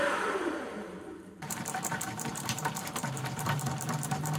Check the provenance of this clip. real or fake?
fake